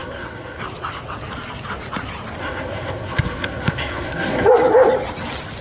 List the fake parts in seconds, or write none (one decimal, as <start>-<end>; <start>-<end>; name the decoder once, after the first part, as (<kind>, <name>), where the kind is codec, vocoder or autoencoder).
0.0-0.6 (codec, SNAC); 2.4-4.5